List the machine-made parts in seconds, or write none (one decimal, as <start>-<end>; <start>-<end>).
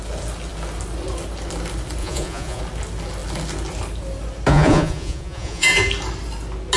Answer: 2.0-2.6; 4.5-5.9